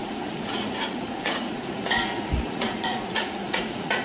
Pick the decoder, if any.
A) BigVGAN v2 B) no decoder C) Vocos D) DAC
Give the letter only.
C